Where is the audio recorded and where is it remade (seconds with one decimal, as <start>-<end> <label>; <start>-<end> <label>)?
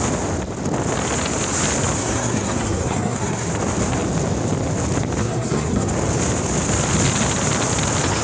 0.0-2.0 recorded; 2.0-3.5 remade; 3.5-5.2 recorded; 5.2-5.9 remade; 5.9-8.2 recorded